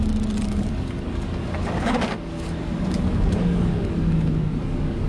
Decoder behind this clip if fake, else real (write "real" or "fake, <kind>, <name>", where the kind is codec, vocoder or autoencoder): fake, codec, DAC